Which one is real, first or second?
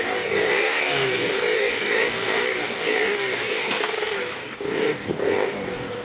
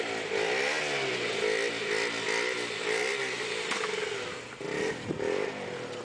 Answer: second